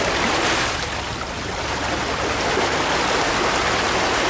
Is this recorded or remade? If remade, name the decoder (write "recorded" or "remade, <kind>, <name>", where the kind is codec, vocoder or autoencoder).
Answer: recorded